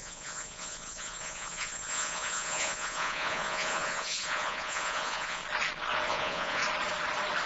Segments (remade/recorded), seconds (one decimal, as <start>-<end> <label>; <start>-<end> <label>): 0.0-5.4 remade; 5.4-6.1 recorded; 6.1-6.6 remade; 6.6-7.5 recorded